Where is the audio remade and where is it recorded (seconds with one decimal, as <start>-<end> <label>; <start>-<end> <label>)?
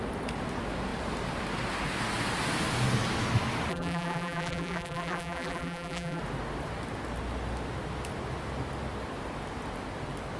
0.0-3.7 recorded; 3.7-6.2 remade; 6.2-10.4 recorded